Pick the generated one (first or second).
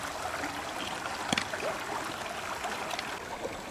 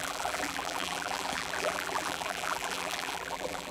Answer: second